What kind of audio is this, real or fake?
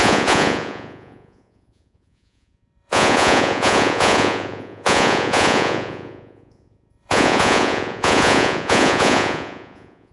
fake